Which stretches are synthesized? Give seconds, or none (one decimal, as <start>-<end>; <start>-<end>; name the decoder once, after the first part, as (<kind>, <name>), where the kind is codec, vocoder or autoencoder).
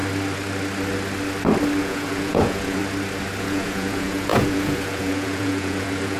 1.8-2.8 (vocoder, Vocos); 3.4-6.2